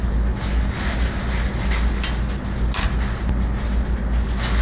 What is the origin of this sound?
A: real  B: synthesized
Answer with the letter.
A